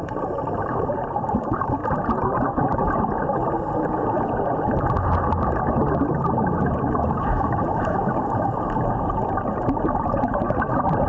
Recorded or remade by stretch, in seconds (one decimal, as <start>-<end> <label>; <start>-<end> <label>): 0.0-1.8 remade; 1.8-6.7 recorded; 6.7-11.1 remade